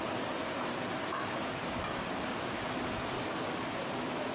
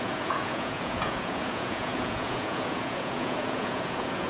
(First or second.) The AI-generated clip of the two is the second